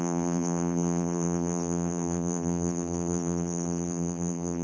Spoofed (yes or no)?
yes